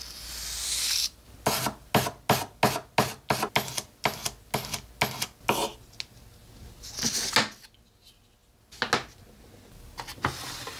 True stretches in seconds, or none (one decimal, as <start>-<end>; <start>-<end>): 0.0-10.8